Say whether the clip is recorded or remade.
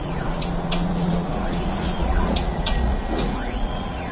remade